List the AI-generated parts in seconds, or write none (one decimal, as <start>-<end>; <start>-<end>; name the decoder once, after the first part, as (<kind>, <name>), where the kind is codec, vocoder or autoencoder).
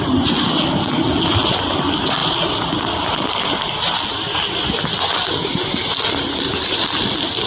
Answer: none